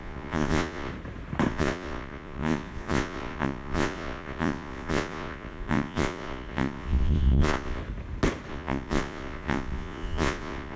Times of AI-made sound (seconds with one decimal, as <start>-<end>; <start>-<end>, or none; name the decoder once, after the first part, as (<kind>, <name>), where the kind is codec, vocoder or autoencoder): 0.0-0.9 (vocoder, Vocos); 1.5-7.8; 8.5-10.8